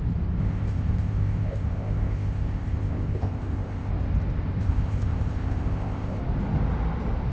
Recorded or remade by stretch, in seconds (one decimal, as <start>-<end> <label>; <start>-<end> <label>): 0.0-0.4 recorded; 0.4-3.9 remade; 3.9-4.6 recorded; 4.6-6.2 remade; 6.2-7.3 recorded